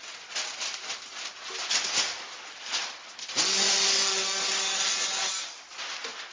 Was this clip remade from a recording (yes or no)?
no